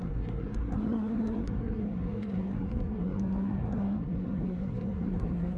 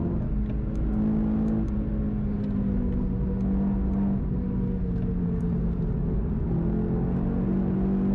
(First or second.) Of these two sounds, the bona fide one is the second